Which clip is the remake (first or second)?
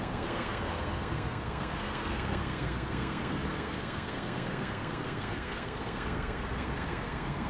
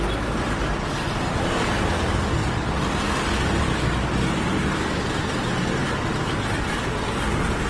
first